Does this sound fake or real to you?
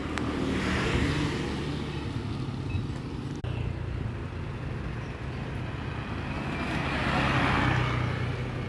real